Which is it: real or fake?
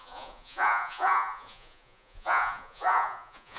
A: fake